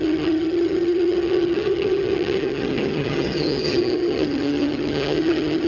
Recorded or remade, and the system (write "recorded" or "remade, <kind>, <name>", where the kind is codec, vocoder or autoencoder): remade, vocoder, HiFi-GAN